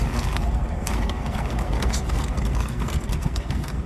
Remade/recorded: remade